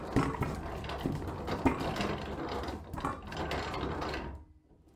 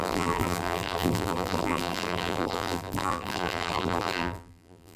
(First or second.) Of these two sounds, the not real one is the second